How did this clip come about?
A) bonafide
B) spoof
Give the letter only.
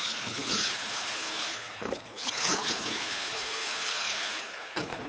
B